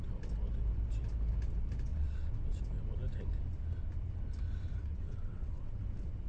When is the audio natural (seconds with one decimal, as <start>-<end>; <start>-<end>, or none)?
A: 0.0-1.9; 2.6-4.8; 5.8-6.3